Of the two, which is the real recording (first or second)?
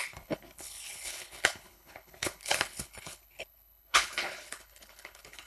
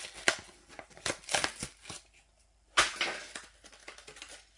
second